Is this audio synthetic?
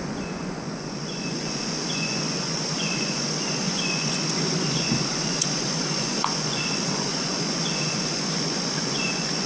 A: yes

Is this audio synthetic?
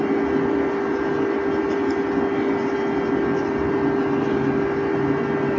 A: no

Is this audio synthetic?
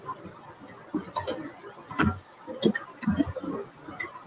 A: no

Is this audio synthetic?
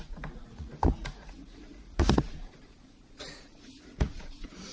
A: yes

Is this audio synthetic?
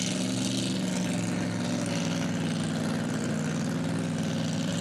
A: no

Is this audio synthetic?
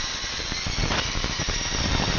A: yes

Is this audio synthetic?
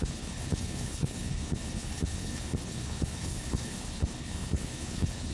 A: yes